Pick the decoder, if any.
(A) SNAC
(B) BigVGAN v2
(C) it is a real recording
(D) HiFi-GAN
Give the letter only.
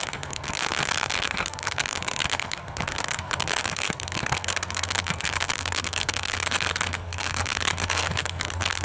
A